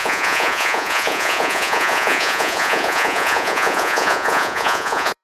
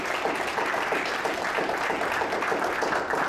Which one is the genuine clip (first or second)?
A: second